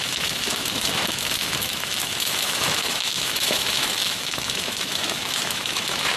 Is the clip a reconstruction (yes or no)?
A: yes